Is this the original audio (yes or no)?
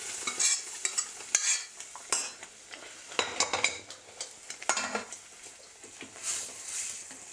yes